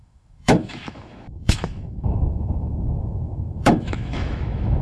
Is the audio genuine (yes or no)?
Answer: no